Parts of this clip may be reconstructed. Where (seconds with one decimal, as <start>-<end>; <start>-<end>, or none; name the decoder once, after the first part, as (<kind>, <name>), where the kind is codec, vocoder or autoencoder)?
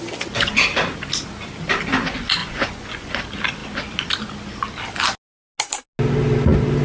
2.4-3.2 (vocoder, Vocos)